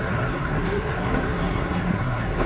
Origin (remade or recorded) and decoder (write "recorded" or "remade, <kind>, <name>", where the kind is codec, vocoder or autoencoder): remade, codec, SNAC